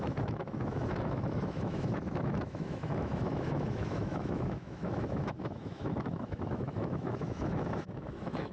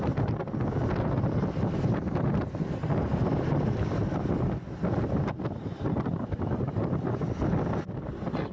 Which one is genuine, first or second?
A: second